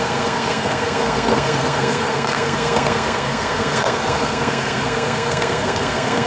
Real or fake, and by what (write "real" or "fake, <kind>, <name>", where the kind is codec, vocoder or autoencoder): fake, codec, SNAC